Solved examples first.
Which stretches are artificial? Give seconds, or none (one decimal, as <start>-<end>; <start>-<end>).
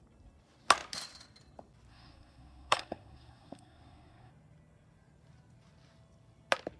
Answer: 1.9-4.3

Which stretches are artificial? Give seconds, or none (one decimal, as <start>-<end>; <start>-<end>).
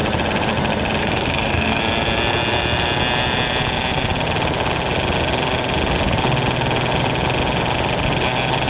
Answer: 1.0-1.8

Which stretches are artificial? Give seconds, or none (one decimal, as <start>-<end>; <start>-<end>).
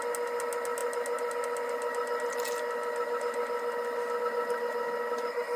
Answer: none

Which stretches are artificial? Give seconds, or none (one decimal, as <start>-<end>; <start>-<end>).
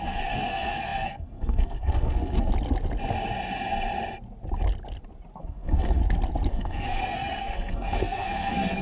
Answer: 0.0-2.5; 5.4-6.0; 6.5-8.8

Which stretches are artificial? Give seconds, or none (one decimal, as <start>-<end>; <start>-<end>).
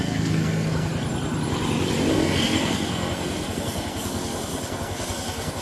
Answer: 0.0-0.9; 2.1-5.6